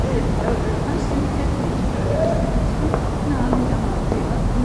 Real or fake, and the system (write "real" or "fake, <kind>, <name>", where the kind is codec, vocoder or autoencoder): real